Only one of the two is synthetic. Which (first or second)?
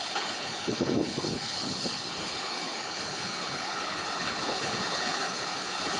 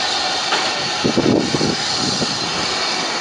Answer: first